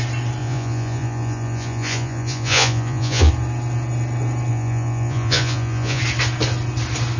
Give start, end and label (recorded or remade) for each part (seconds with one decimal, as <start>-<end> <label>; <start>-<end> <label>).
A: 0.0-0.4 recorded; 0.4-3.3 remade; 3.3-4.5 recorded; 4.5-6.0 remade; 6.0-7.2 recorded